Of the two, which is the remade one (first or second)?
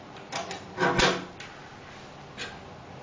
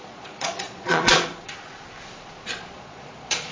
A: second